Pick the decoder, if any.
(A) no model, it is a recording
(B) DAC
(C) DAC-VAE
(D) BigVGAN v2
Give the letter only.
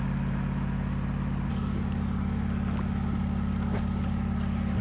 A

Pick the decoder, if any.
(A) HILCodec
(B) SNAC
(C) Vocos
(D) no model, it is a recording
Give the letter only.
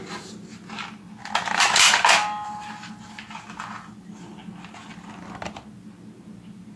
D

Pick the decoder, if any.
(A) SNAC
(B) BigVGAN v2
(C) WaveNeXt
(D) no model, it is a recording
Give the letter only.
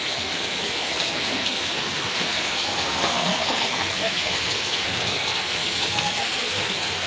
A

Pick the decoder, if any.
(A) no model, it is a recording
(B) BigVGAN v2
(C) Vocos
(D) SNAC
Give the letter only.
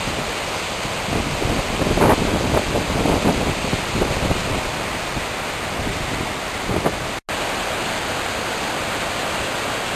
A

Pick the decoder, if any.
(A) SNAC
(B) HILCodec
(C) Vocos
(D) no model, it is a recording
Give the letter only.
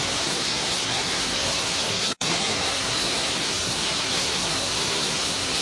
A